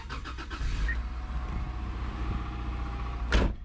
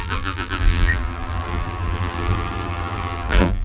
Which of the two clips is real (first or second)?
first